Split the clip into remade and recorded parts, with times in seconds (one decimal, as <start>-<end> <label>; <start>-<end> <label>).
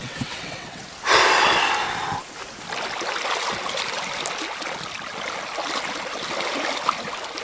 0.0-0.8 remade; 0.8-7.4 recorded